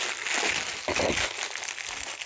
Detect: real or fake real